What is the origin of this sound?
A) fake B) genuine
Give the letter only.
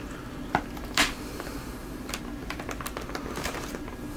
B